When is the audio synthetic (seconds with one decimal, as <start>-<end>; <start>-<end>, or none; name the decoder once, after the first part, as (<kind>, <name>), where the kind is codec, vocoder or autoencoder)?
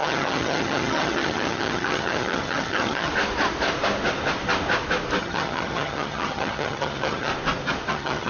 0.0-3.1 (vocoder, HiFi-GAN); 5.2-7.3; 7.9-8.3